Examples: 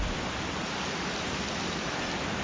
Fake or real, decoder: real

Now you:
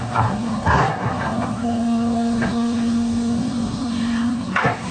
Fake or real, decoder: fake, codec, SNAC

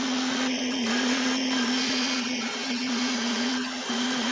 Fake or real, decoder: fake, vocoder, Vocos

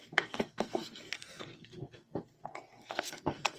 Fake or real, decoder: fake, codec, SNAC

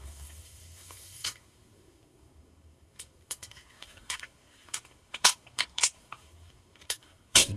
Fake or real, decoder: fake, codec, SNAC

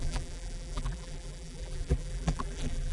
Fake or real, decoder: fake, vocoder, BigVGAN v2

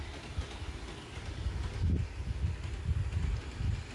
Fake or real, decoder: real